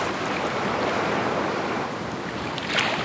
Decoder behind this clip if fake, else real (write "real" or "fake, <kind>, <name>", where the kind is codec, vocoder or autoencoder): real